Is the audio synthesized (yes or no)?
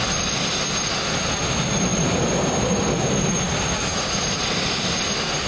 no